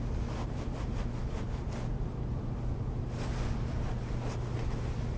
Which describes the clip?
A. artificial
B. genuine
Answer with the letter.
B